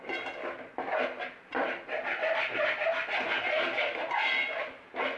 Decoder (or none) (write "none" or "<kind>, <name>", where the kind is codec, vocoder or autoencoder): none